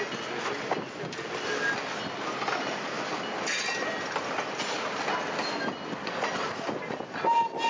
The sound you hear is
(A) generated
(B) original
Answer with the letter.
B